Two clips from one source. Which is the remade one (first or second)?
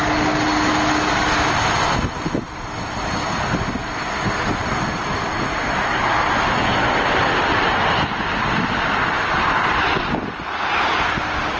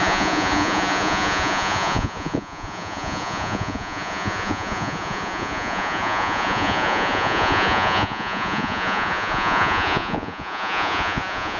second